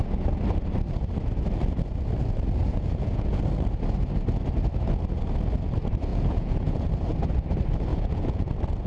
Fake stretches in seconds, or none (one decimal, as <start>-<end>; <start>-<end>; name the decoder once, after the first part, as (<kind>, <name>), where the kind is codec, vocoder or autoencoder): 2.6-3.4 (vocoder, Vocos); 6.1-6.9; 7.9-8.5